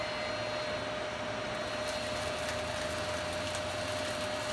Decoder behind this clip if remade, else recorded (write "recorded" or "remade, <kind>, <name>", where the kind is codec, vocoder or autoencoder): recorded